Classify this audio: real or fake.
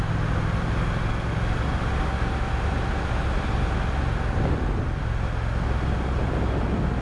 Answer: real